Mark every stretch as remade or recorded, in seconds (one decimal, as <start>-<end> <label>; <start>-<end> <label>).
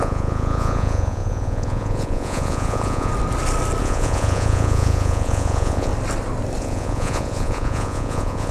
0.0-3.1 remade; 3.1-3.8 recorded; 3.8-5.9 remade; 5.9-6.6 recorded; 6.6-8.5 remade